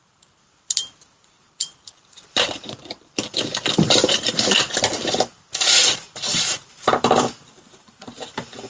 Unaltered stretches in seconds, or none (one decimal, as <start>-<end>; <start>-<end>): none

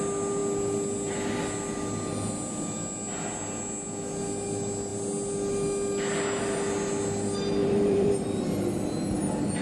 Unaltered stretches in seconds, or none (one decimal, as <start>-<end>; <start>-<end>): 0.0-7.6; 8.1-9.6

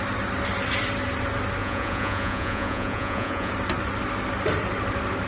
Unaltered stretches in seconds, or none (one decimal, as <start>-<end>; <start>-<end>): 0.0-1.6; 3.5-5.3

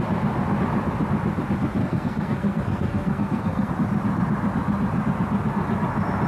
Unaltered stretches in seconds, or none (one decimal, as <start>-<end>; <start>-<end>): 0.0-1.8; 3.7-6.3

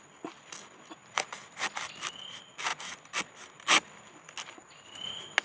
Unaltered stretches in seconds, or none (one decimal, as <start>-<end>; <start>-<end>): 0.0-2.7; 3.3-5.4

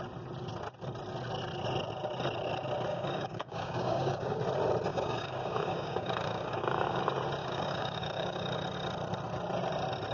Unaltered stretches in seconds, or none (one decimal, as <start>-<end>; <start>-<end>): 0.0-2.9; 4.4-4.9; 7.0-7.4; 8.5-10.1